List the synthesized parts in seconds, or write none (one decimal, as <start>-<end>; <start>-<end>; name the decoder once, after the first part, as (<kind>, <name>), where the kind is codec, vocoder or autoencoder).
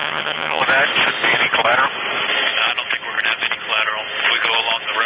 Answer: 0.0-0.6 (vocoder, HiFi-GAN)